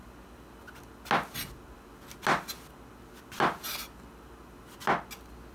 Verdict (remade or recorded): recorded